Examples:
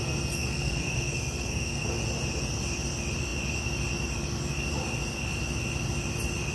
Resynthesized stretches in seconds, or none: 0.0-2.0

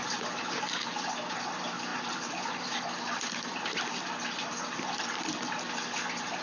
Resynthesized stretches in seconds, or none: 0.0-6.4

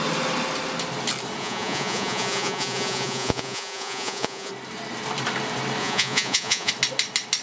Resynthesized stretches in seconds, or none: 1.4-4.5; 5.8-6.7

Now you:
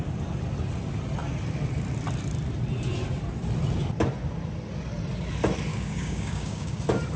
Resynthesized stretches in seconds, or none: 5.7-6.8

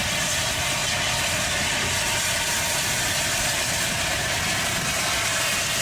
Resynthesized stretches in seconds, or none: none